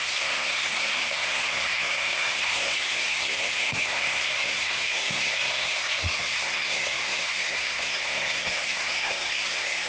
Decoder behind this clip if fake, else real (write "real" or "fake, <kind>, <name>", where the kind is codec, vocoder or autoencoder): fake, codec, SNAC